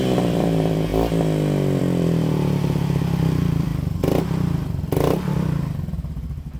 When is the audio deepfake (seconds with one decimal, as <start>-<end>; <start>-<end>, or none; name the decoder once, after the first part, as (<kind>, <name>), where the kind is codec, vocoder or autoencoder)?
0.0-0.9 (vocoder, BigVGAN v2); 1.8-6.6